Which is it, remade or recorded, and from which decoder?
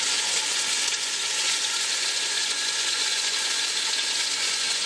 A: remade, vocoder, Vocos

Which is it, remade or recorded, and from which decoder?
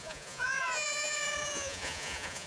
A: remade, vocoder, Vocos